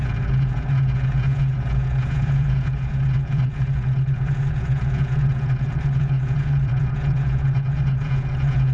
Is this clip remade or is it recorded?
remade